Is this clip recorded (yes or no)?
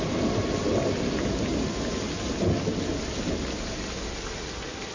yes